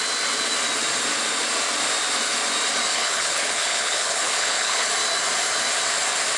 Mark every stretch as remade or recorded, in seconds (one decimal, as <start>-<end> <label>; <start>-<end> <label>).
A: 0.0-2.9 recorded; 2.9-4.9 remade; 4.9-6.4 recorded